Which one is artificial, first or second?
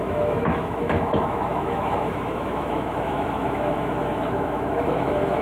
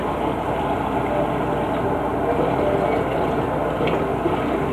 first